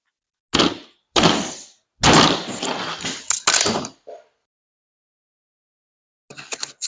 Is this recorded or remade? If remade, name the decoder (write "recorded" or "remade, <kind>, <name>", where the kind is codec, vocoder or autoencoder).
recorded